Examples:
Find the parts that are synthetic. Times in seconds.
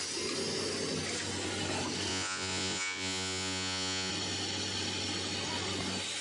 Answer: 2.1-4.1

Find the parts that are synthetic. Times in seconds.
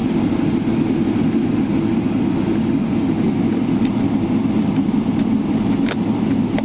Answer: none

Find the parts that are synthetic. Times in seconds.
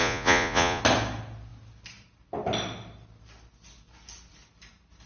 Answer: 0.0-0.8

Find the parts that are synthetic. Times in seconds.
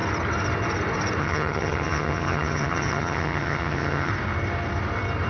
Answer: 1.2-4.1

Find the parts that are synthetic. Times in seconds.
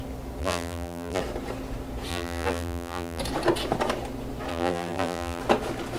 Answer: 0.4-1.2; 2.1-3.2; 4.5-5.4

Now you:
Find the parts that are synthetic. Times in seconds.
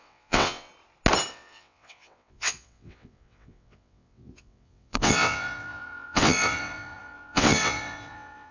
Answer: 0.0-0.7; 1.3-8.5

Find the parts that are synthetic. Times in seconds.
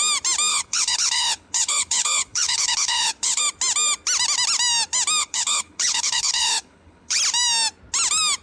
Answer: 0.5-3.4; 5.2-7.2